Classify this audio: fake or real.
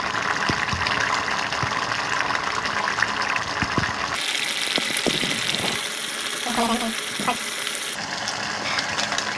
real